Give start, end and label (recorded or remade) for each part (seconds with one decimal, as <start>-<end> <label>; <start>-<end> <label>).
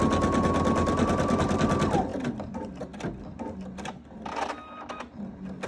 0.0-5.7 recorded